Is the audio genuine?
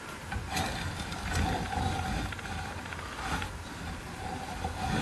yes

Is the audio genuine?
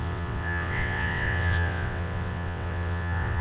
no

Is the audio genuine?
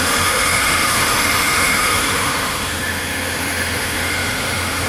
no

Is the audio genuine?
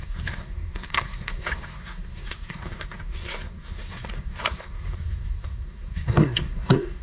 no